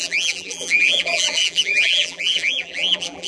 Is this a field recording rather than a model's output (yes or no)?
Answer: no